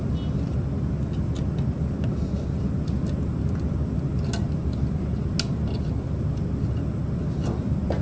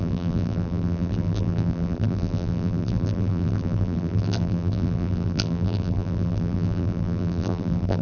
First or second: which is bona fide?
first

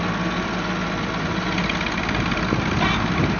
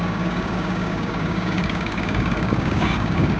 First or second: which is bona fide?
first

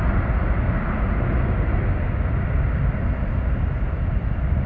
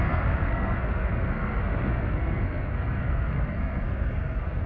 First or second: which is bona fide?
first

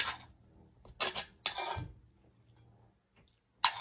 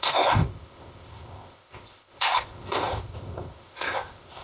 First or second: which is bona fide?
first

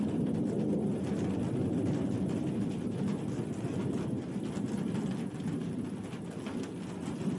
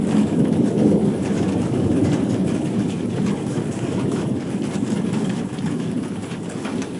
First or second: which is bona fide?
first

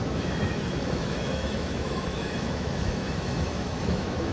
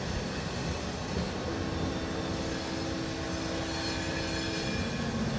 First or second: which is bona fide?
second